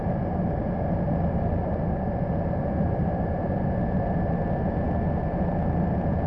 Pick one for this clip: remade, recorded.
remade